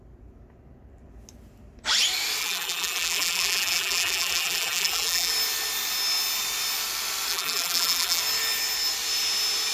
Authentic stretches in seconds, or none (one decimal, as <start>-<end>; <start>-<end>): 0.0-2.4; 5.3-7.3; 8.2-9.7